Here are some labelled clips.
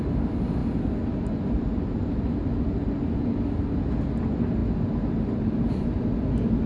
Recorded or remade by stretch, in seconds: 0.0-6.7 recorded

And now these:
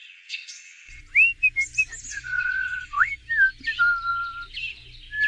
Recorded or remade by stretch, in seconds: 0.0-1.0 remade; 1.0-2.1 recorded; 2.1-3.1 remade; 3.1-5.3 recorded

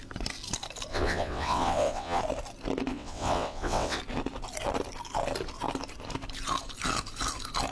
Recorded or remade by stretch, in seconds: 0.0-0.9 recorded; 0.9-2.2 remade; 2.2-2.9 recorded; 2.9-4.0 remade; 4.0-7.7 recorded

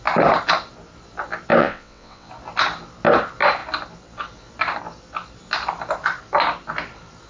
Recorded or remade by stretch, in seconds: 0.0-1.6 recorded; 1.6-2.3 remade; 2.3-7.3 recorded

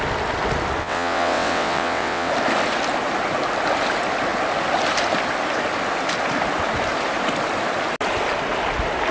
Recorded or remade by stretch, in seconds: 0.0-0.8 recorded; 0.8-2.3 remade; 2.3-9.1 recorded

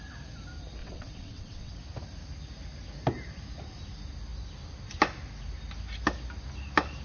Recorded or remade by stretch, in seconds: 0.0-0.8 recorded; 0.8-1.7 remade; 1.7-7.0 recorded

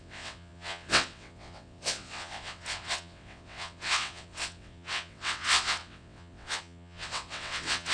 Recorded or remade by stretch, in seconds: 0.0-7.9 remade

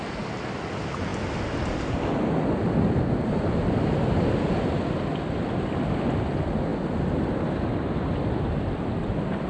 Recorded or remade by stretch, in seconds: 0.0-9.5 recorded